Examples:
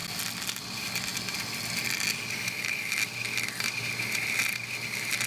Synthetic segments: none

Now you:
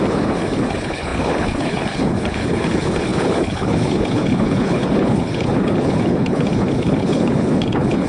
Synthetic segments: 0.0-8.1 (codec, HILCodec)

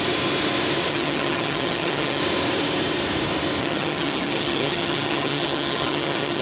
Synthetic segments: 0.9-2.2 (vocoder, HiFi-GAN); 3.6-6.4